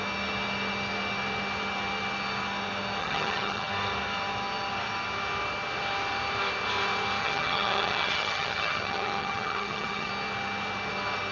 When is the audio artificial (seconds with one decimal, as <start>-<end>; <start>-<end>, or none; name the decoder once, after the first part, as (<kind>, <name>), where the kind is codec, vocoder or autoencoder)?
3.0-3.7 (vocoder, HiFi-GAN); 7.2-10.1